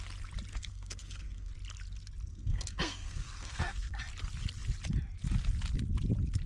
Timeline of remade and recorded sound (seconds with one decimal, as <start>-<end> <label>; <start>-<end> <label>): 0.0-0.5 recorded; 0.5-1.5 remade; 1.5-2.3 recorded; 2.3-4.0 remade; 4.0-6.5 recorded